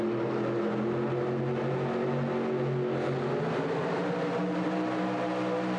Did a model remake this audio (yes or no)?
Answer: no